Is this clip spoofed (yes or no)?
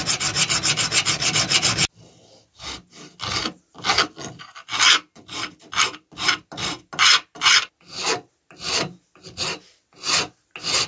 no